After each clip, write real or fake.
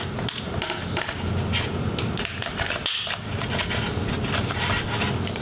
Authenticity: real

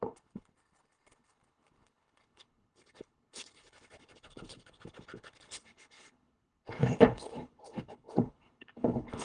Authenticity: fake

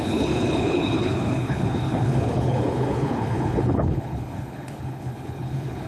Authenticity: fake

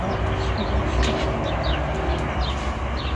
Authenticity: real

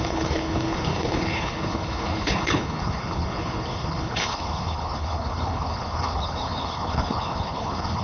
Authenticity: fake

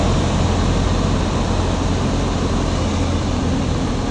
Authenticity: real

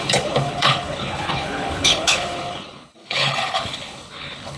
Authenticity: fake